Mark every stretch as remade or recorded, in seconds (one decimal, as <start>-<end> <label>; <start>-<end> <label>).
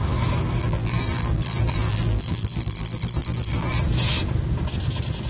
0.0-0.6 recorded; 0.6-3.8 remade; 3.8-5.3 recorded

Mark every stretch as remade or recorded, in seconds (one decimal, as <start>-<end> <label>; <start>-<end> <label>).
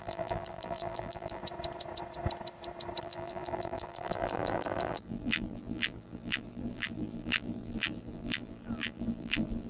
0.0-1.4 remade; 1.4-3.0 recorded; 3.0-9.7 remade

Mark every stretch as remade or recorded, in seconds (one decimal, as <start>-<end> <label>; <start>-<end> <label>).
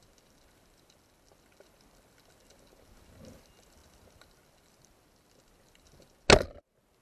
0.0-7.0 recorded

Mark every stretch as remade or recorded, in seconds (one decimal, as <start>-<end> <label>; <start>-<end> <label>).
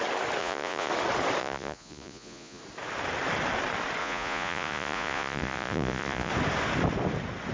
0.0-0.4 recorded; 0.4-0.9 remade; 0.9-1.4 recorded; 1.4-2.6 remade; 2.6-4.0 recorded; 4.0-6.3 remade; 6.3-7.5 recorded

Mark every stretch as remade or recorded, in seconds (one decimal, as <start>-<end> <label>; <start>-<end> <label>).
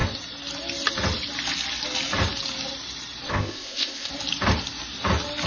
0.0-3.3 recorded; 3.3-4.1 remade; 4.1-5.5 recorded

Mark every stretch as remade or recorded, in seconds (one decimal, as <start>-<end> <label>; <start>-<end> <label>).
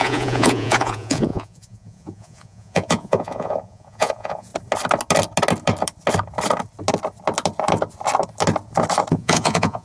0.0-4.5 remade; 4.5-9.1 recorded; 9.1-9.8 remade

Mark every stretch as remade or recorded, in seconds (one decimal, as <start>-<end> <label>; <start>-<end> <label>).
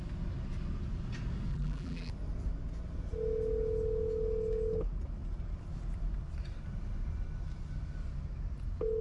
0.0-1.5 recorded; 1.5-2.1 remade; 2.1-9.0 recorded